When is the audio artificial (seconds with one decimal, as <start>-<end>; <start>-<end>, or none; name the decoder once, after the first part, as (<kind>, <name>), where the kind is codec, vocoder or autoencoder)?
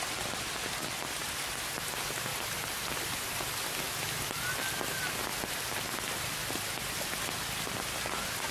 none